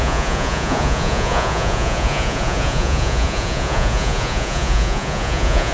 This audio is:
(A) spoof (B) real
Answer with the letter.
A